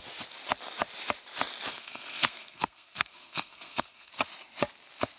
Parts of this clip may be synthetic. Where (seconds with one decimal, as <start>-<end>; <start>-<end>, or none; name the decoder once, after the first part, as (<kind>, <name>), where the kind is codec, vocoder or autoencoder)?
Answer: 1.7-4.1 (codec, SNAC)